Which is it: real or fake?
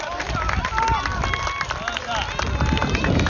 real